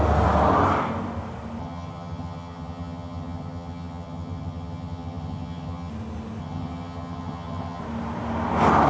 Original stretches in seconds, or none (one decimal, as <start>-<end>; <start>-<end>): 0.0-1.6; 5.9-6.4; 7.8-8.9